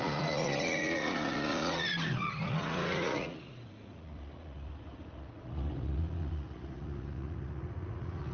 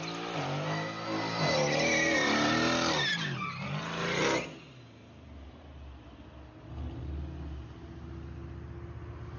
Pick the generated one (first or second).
first